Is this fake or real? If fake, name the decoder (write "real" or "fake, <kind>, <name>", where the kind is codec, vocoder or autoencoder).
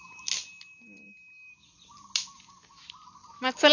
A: real